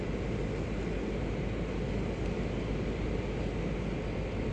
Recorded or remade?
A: recorded